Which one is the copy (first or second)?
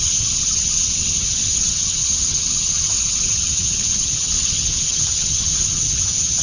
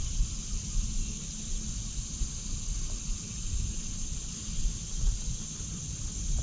first